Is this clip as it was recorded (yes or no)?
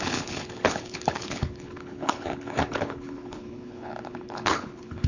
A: no